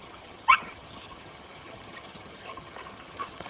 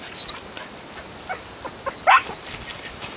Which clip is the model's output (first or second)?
first